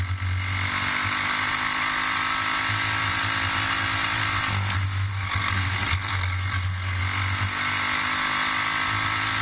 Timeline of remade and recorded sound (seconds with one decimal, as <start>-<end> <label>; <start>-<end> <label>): 0.0-5.1 recorded; 5.1-7.0 remade; 7.0-9.4 recorded